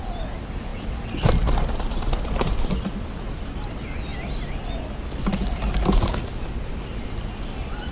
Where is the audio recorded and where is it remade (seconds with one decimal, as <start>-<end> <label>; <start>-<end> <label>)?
0.0-7.9 recorded